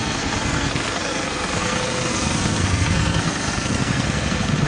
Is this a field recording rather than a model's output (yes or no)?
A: no